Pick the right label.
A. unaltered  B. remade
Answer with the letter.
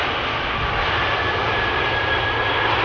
A